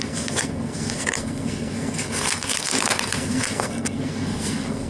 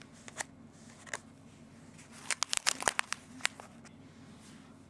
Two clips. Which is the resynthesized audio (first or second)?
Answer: first